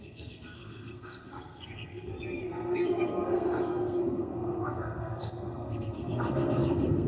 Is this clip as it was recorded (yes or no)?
no